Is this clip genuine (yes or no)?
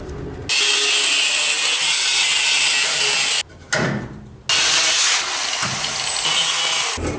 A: yes